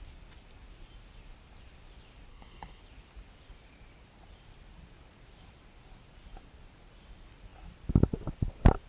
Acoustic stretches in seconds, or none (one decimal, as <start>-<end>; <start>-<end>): 0.0-2.3; 2.8-8.9